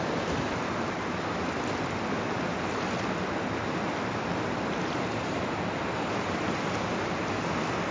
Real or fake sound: real